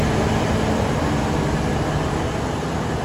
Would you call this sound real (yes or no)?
yes